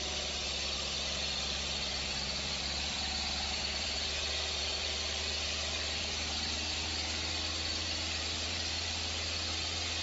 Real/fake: fake